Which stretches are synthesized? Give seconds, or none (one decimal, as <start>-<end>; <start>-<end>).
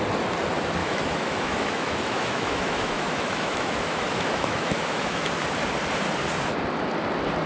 0.8-5.3